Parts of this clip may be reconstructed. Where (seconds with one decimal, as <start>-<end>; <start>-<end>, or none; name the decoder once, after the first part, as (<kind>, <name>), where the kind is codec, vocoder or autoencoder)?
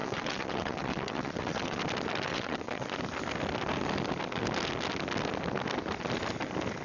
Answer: 0.0-1.8 (vocoder, WaveNeXt); 2.3-2.9